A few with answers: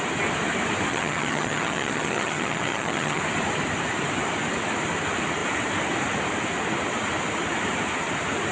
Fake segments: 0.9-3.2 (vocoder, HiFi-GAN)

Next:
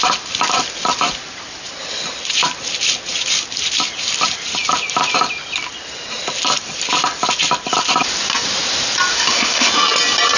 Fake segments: 9.1-9.7 (autoencoder, DAC-VAE)

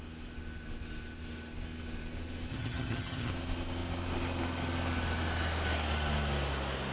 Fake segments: 2.5-3.3 (vocoder, HiFi-GAN)

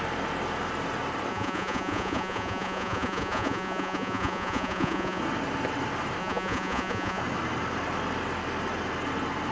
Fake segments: 1.3-5.2 (vocoder, Vocos); 6.2-7.2

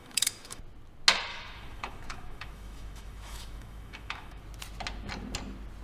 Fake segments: 0.0-0.6 (autoencoder, DAC-VAE); 1.3-4.4

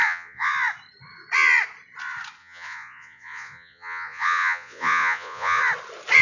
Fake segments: 0.0-0.5 (vocoder, Vocos); 2.4-5.6